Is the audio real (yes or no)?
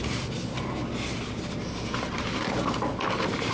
yes